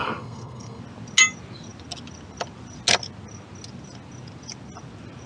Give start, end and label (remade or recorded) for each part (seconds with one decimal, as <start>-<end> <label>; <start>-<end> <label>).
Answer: 0.0-0.8 remade; 0.8-5.3 recorded